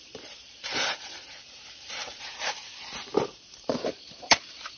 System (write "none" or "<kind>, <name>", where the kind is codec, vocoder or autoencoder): vocoder, BigVGAN v2